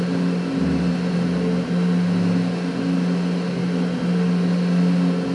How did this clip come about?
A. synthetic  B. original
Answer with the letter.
B